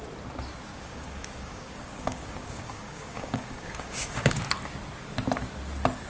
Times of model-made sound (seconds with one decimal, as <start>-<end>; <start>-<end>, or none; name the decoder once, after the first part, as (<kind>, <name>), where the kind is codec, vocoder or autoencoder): 0.7-4.4 (codec, DAC)